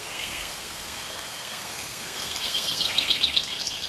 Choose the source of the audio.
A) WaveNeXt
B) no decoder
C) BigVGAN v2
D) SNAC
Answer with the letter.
D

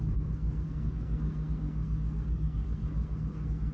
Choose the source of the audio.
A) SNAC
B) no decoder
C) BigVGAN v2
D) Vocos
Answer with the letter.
A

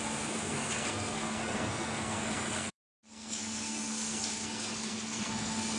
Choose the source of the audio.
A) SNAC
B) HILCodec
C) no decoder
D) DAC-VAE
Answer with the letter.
A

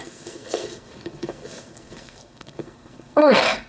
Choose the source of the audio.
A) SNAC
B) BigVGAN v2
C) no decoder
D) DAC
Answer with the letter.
A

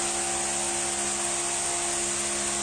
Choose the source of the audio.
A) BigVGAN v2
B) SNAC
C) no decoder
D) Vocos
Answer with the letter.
C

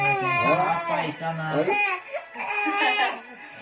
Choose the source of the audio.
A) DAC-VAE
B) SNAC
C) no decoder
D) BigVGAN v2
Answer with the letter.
C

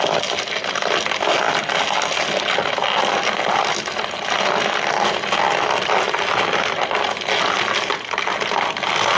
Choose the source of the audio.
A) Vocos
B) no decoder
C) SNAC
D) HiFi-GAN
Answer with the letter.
B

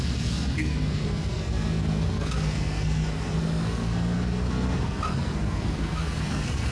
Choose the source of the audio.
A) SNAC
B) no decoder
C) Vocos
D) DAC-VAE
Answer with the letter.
A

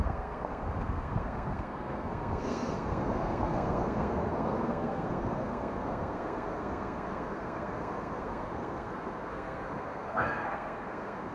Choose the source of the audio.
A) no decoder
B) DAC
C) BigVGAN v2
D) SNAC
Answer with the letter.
D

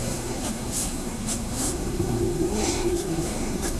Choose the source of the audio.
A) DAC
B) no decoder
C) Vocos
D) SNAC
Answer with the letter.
D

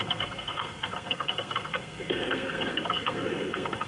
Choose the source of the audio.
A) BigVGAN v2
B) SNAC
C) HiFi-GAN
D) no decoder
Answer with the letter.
B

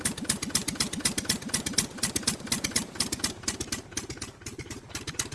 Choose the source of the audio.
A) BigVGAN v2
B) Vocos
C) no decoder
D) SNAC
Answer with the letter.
C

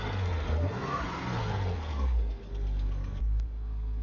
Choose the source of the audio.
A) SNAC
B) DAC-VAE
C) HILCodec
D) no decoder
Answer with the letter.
A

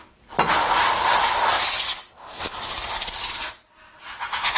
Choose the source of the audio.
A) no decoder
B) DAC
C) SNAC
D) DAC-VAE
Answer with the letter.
A